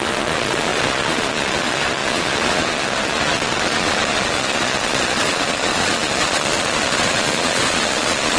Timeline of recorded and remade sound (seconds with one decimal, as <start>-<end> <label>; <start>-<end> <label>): 0.0-8.4 remade